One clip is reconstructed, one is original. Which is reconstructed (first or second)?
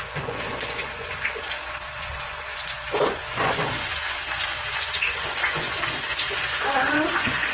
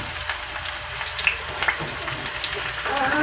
first